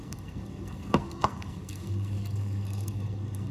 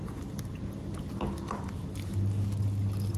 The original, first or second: second